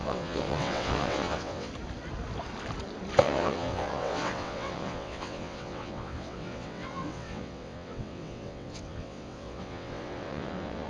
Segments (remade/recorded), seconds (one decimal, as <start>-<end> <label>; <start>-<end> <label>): 0.0-1.7 remade; 1.7-3.2 recorded; 3.2-10.9 remade